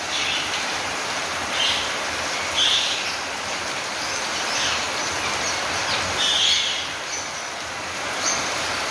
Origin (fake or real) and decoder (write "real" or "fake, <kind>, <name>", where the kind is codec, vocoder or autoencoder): real